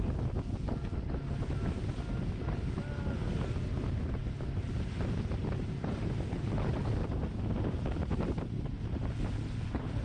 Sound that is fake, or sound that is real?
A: real